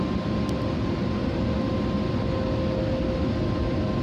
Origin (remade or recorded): recorded